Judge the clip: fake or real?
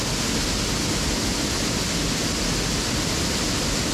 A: real